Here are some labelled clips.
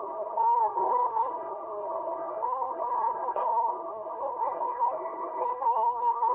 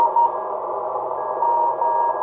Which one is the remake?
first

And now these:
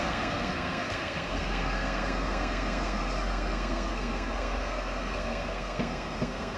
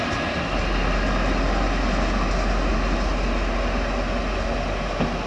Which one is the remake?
first